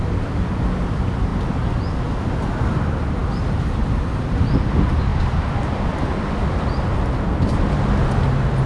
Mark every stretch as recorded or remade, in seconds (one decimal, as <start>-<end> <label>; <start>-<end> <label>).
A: 0.0-8.7 recorded